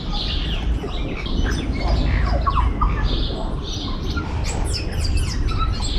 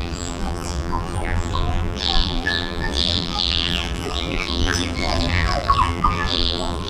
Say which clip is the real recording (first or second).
first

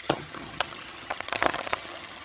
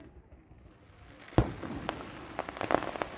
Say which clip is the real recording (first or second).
second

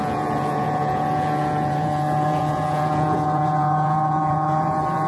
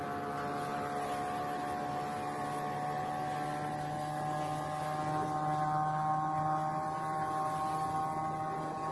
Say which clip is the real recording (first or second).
second